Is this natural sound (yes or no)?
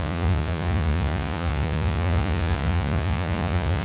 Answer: no